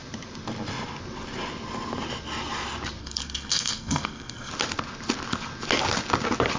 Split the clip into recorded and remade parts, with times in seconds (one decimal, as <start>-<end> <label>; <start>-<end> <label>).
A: 0.0-3.0 recorded; 3.0-4.5 remade; 4.5-6.6 recorded